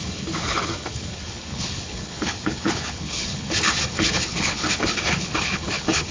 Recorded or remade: remade